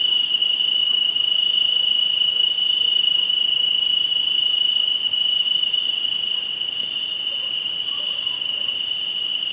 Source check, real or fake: fake